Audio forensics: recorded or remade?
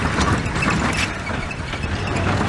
recorded